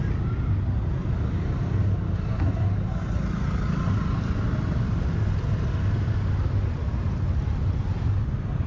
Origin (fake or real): real